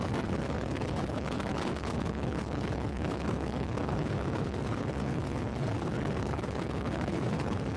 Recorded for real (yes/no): no